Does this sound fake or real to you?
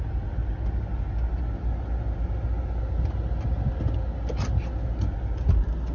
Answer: real